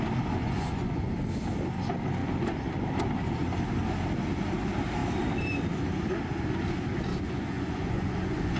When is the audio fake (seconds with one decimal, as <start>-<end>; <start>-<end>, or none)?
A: 0.4-1.1; 7.1-8.6